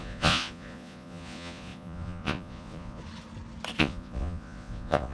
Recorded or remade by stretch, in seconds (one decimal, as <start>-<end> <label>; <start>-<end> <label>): 0.0-3.0 remade; 3.0-3.8 recorded; 3.8-5.1 remade